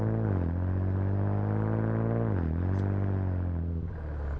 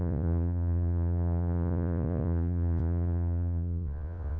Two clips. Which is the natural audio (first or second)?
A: first